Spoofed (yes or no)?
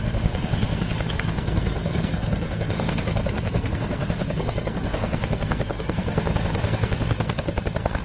yes